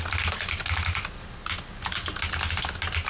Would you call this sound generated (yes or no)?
no